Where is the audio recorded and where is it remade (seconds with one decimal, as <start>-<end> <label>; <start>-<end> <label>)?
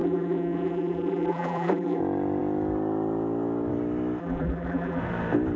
0.0-2.0 remade; 2.0-4.2 recorded; 4.2-5.0 remade; 5.0-5.6 recorded